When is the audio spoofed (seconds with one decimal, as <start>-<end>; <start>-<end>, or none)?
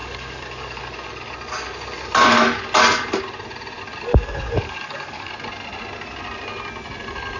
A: 0.0-0.8; 4.1-5.3